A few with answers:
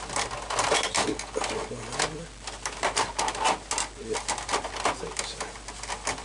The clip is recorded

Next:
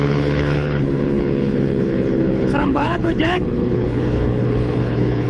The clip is remade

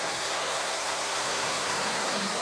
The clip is remade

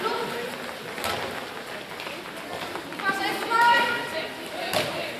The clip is recorded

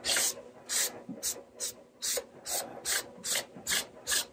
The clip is recorded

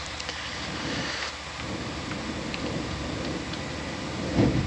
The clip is recorded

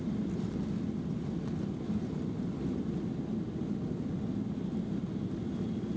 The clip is recorded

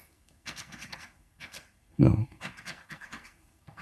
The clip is remade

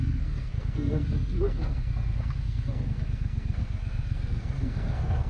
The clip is remade